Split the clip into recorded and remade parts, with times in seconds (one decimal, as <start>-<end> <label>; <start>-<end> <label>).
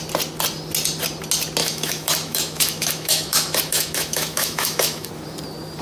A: 0.0-1.6 recorded; 1.6-5.1 remade; 5.1-5.8 recorded